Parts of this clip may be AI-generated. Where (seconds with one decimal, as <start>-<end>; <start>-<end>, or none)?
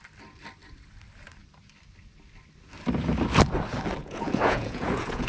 4.0-5.3